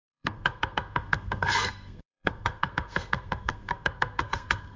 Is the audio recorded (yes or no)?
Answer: no